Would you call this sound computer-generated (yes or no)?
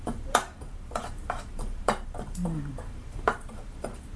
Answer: yes